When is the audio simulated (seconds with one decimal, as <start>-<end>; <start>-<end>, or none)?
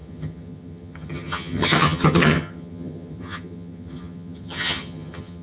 0.0-5.4